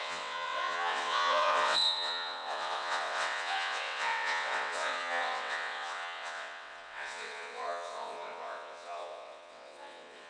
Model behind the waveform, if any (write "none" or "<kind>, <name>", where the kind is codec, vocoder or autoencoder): vocoder, WaveNeXt